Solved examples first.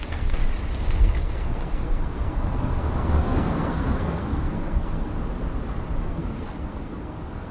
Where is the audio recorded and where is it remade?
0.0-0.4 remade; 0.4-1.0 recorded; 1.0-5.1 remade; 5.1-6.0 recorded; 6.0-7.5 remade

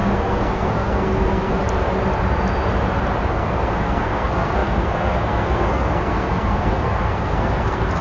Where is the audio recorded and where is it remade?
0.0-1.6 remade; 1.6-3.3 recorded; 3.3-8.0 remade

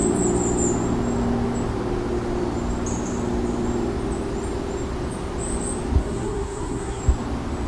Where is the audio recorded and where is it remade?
0.0-6.0 recorded; 6.0-7.0 remade; 7.0-7.7 recorded

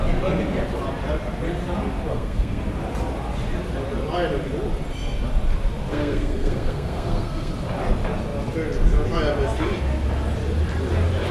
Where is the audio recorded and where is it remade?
0.0-2.1 recorded; 2.1-2.6 remade; 2.6-5.9 recorded; 5.9-7.5 remade; 7.5-11.3 recorded

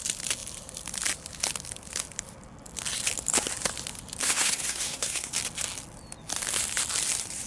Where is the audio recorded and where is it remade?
0.0-4.2 recorded; 4.2-5.3 remade; 5.3-7.5 recorded